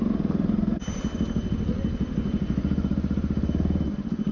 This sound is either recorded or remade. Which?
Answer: recorded